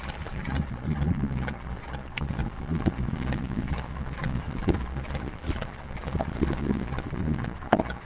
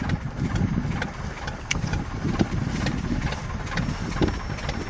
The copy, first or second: first